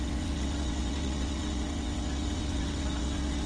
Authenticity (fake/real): fake